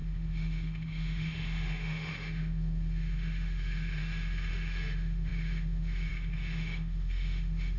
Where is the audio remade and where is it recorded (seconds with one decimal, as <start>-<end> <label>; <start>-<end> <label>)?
0.0-7.8 remade